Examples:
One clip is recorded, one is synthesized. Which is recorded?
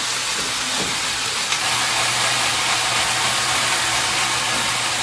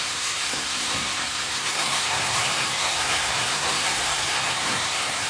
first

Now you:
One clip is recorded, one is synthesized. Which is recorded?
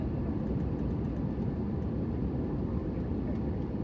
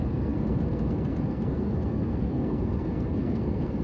first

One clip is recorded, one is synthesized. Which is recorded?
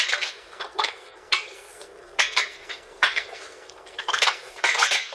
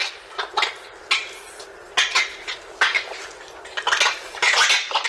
second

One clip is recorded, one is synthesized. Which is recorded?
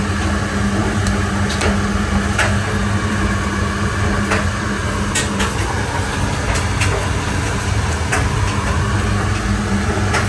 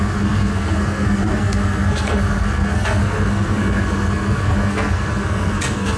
first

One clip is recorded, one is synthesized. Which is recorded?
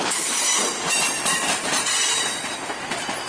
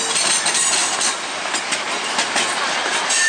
second